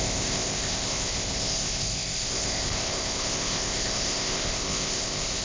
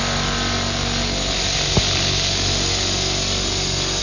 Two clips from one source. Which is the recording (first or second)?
second